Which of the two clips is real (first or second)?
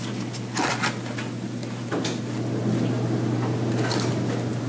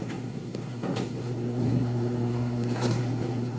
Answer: first